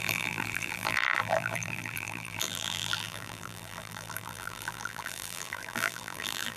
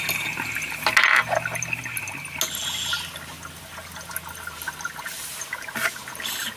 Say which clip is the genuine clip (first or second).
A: second